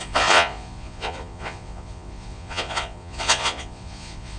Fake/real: fake